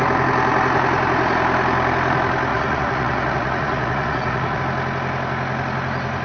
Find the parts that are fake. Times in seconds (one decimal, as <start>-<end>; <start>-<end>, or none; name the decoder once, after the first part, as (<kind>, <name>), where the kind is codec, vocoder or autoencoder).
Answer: 2.5-4.6 (vocoder, Vocos)